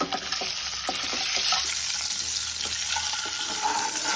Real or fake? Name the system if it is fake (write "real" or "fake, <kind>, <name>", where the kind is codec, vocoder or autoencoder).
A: real